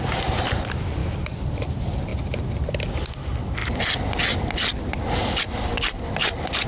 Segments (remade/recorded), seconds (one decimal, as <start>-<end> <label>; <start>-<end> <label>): 0.0-1.0 recorded; 1.0-1.7 remade; 1.7-6.7 recorded